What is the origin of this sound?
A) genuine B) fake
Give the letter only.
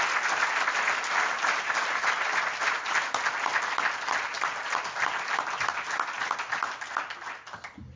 A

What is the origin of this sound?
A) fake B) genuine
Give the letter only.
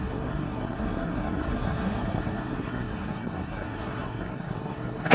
A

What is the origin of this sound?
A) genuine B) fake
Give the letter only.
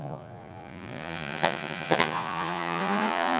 B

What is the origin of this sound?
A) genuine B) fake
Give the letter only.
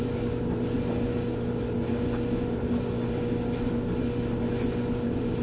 A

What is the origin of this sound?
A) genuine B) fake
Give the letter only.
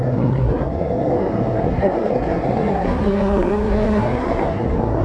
B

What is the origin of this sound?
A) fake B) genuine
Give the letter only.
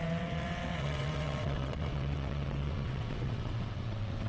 A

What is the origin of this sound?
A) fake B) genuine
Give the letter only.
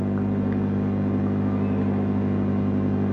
B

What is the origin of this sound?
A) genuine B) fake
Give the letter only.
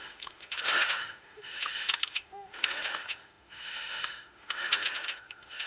B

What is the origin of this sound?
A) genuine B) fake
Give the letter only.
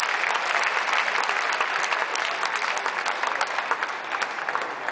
A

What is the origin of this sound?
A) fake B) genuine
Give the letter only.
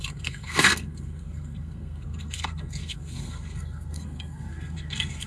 A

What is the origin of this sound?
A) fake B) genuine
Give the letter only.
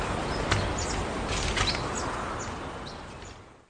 B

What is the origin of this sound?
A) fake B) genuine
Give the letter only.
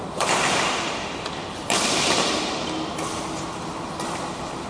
B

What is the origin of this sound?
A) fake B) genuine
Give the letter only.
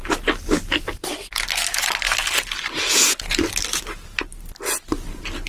B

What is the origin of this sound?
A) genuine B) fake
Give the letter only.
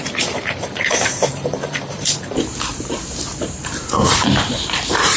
B